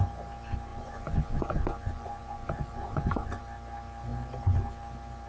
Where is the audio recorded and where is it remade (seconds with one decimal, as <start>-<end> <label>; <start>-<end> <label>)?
0.0-0.7 recorded; 0.7-3.4 remade; 3.4-5.3 recorded